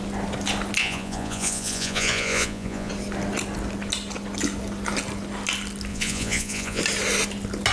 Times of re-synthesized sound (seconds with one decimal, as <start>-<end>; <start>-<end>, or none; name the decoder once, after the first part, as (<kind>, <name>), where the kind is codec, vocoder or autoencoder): 0.8-2.9 (vocoder, Vocos); 5.9-6.8